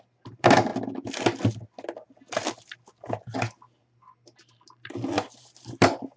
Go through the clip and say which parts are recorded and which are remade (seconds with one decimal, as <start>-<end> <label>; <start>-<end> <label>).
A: 0.0-0.7 remade; 0.7-4.4 recorded; 4.4-6.2 remade